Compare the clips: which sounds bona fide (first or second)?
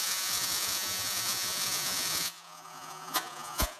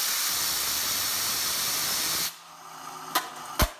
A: second